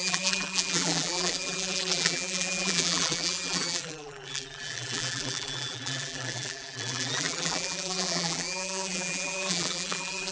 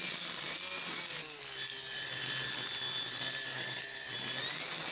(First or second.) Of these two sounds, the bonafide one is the second